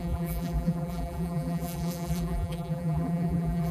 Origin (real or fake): fake